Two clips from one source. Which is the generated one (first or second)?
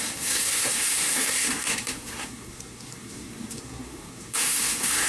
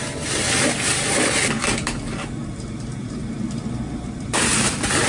first